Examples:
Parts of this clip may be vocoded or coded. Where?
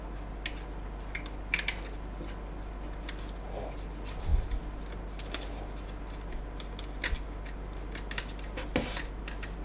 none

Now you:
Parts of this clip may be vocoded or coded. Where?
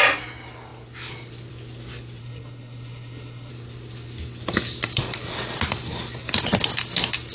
2.2-3.5 (codec, SNAC)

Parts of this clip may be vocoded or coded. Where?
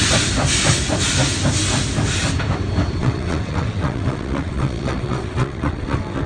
3.0-6.3 (vocoder, WaveNeXt)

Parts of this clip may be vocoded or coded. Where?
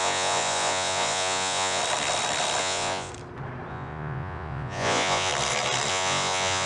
0.0-1.8 (vocoder, Vocos); 2.6-3.1; 3.7-5.3; 5.9-6.7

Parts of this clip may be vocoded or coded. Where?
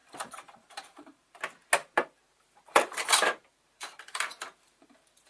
0.0-1.4 (vocoder, BigVGAN v2); 1.8-5.3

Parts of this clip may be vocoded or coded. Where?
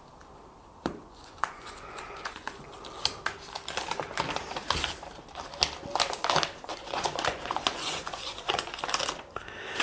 1.0-2.7 (vocoder, Vocos); 6.7-8.8